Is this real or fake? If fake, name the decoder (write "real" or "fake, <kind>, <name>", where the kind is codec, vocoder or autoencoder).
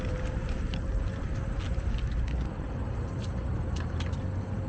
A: real